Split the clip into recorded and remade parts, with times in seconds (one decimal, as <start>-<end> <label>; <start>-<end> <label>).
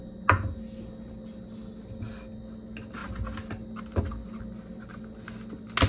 0.0-5.9 recorded